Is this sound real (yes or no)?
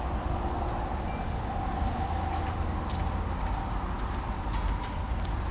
yes